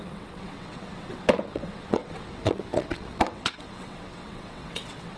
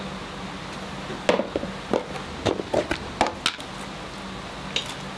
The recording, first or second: second